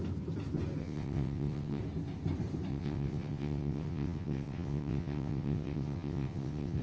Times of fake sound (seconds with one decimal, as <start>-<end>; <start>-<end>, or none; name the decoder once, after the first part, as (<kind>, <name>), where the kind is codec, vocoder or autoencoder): 0.8-1.8 (vocoder, WaveNeXt); 2.7-6.8